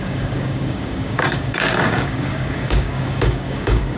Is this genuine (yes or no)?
no